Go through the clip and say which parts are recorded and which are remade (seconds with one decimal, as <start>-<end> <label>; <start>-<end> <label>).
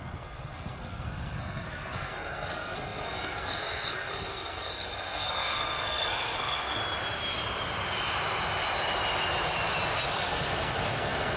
0.0-6.8 remade; 6.8-10.1 recorded; 10.1-11.4 remade